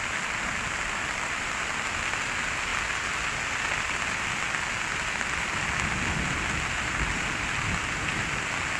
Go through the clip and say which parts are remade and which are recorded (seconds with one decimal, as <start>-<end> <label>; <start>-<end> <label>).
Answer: 0.0-8.8 recorded